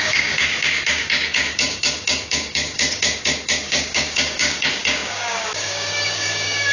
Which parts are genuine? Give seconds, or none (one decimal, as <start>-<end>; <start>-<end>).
none

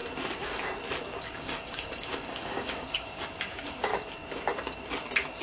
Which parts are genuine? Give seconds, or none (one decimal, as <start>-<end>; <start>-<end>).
0.0-1.2; 3.9-5.4

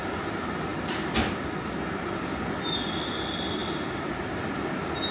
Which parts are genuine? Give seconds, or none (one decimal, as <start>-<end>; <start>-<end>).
0.0-5.1

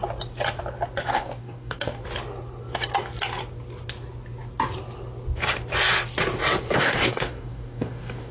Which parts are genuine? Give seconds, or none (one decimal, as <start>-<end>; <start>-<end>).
0.0-1.1; 2.0-6.8

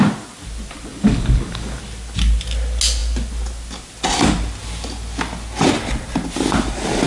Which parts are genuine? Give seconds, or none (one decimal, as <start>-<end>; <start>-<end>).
0.0-0.9; 1.8-7.1